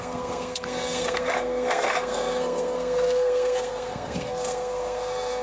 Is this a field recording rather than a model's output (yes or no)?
no